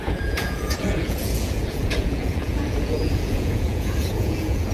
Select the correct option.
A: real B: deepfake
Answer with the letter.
B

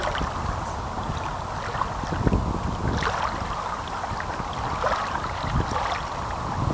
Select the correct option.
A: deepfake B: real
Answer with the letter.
B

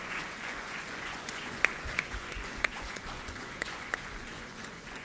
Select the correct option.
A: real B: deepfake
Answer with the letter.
B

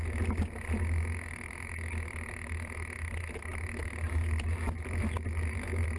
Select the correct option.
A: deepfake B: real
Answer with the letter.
B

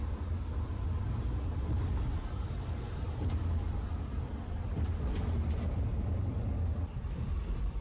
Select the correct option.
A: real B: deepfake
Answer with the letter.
A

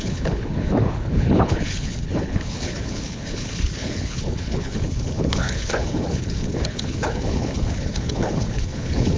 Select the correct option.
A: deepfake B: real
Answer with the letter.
A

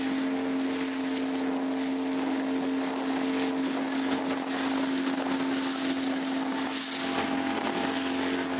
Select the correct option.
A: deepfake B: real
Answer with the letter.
B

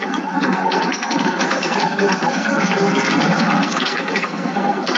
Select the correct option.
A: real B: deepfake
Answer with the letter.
B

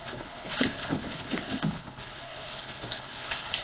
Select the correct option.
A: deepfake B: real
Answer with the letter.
A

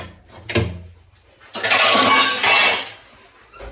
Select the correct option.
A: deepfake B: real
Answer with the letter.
B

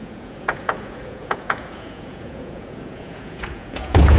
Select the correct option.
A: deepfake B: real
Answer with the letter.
A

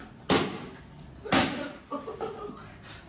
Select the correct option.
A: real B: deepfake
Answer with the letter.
A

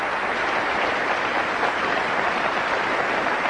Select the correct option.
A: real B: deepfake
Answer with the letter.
A